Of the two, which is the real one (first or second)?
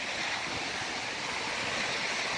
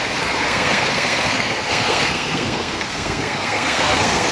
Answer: first